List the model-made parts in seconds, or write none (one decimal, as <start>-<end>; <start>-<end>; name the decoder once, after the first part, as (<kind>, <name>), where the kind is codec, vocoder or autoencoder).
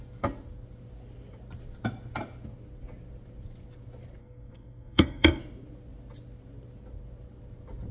4.2-5.4 (codec, SNAC)